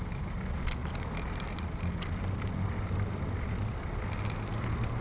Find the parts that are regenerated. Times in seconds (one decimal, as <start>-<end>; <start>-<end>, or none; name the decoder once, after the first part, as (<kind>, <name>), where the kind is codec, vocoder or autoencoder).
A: none